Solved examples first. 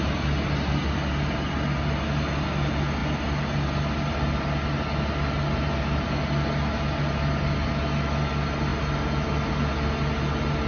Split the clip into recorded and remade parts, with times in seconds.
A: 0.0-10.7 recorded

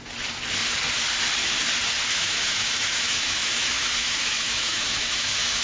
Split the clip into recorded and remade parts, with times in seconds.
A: 0.0-2.1 recorded; 2.1-5.6 remade

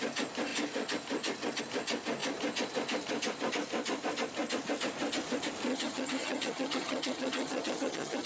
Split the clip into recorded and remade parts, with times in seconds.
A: 0.0-5.7 recorded; 5.7-8.3 remade

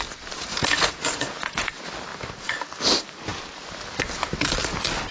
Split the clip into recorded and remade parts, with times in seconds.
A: 0.0-0.5 recorded; 0.5-1.7 remade; 1.7-5.1 recorded

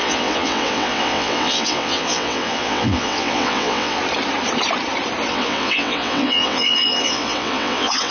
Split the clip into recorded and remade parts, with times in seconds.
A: 0.0-4.0 remade; 4.0-5.3 recorded; 5.3-8.1 remade

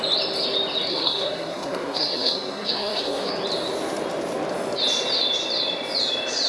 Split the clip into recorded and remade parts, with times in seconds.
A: 0.0-0.9 recorded; 0.9-3.3 remade; 3.3-6.5 recorded